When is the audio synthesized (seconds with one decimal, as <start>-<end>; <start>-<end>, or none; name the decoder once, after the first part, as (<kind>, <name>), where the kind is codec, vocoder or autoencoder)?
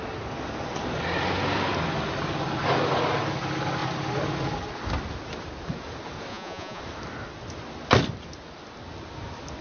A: 6.3-6.8 (vocoder, Vocos)